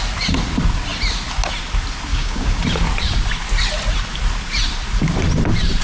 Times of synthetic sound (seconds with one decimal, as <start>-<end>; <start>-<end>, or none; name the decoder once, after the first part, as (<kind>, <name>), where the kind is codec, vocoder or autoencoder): 2.1-2.6 (codec, DAC)